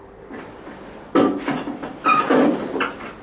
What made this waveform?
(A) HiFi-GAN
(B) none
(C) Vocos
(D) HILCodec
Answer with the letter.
B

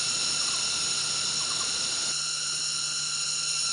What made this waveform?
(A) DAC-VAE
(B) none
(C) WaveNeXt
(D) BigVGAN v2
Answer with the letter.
B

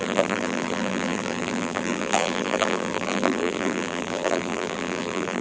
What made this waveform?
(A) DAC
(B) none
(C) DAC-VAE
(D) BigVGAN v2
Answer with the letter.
D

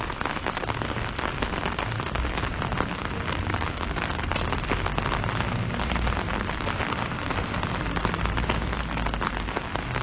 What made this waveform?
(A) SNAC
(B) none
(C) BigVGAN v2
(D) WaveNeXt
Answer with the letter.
B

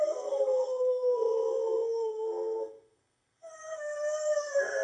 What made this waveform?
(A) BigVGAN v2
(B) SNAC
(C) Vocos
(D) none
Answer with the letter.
B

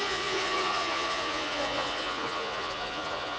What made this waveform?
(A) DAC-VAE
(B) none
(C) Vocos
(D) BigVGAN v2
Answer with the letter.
C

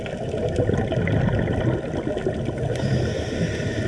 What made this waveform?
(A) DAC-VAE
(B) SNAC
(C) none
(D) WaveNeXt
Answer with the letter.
C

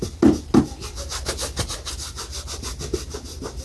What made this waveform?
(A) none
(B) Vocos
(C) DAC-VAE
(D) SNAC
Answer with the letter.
A